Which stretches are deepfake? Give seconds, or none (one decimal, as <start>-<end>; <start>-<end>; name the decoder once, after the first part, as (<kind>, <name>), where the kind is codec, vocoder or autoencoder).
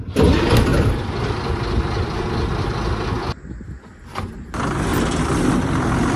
0.7-2.5 (vocoder, BigVGAN v2); 4.9-5.6